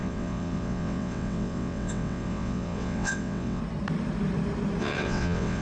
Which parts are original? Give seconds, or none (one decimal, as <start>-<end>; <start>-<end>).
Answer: 3.6-4.8